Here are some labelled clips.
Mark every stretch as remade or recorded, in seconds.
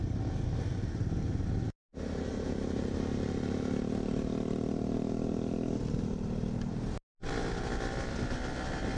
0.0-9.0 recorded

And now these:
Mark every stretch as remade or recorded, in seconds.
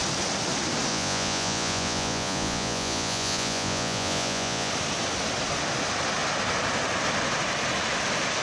0.0-0.9 recorded; 0.9-4.7 remade; 4.7-8.4 recorded